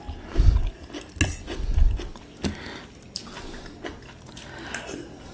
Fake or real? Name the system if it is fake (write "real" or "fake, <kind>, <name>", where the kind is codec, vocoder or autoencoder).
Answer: real